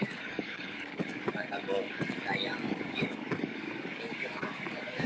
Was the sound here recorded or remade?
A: remade